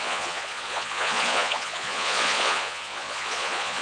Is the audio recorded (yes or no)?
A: no